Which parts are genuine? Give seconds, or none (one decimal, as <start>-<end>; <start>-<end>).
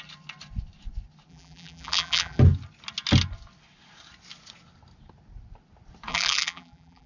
0.0-1.3; 2.4-6.1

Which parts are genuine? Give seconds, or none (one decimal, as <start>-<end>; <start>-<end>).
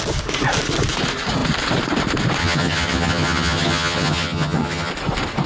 0.0-2.4; 4.9-5.5